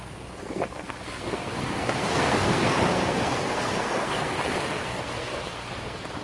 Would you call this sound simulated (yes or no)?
yes